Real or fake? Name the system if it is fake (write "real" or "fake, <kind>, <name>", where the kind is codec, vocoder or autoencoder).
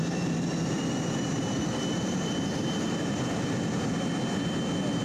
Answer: fake, vocoder, BigVGAN v2